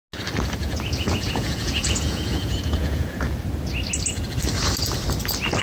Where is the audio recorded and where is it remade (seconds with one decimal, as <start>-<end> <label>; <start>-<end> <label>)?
0.0-0.6 recorded; 0.6-3.2 remade; 3.2-5.6 recorded